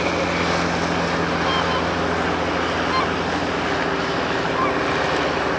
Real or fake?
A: real